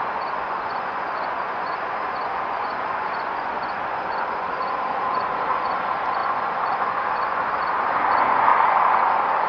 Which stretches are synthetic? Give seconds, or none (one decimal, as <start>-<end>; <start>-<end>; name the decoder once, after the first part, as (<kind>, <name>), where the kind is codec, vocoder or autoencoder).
0.0-9.5 (vocoder, Vocos)